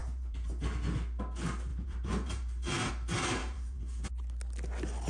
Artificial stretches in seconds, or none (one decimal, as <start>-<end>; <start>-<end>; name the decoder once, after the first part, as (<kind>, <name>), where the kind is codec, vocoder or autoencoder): 0.0-0.5 (vocoder, BigVGAN v2); 1.7-2.9; 3.4-4.2